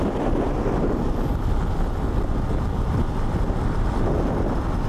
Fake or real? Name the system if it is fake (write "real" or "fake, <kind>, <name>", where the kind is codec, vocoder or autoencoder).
real